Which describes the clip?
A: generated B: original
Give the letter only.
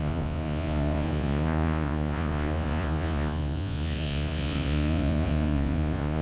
A